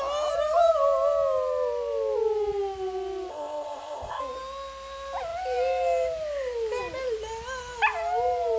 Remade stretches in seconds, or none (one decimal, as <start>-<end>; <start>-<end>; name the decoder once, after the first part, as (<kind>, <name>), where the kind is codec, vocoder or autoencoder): 3.3-4.2 (codec, ZipCodec)